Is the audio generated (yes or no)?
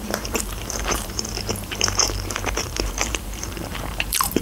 yes